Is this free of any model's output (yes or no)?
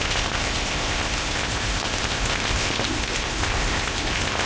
no